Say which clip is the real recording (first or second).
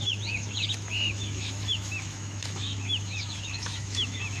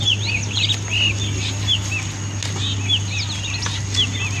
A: second